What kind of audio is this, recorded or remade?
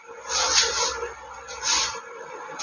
recorded